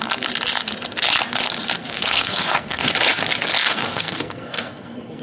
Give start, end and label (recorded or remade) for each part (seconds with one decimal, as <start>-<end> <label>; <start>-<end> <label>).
0.0-1.8 recorded; 1.8-2.9 remade; 2.9-3.6 recorded; 3.6-5.2 remade